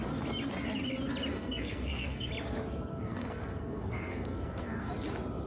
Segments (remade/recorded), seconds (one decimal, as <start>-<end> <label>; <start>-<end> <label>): 0.0-1.3 recorded; 1.3-2.3 remade; 2.3-2.9 recorded; 2.9-4.9 remade; 4.9-5.5 recorded